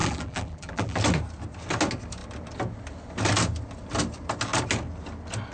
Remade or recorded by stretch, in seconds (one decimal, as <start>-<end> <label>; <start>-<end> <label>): 0.0-1.0 remade; 1.0-5.5 recorded